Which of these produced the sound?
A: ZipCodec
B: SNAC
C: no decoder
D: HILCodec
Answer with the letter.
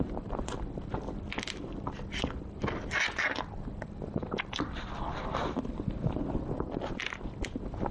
C